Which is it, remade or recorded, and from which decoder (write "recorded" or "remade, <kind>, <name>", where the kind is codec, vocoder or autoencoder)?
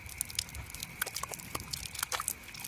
recorded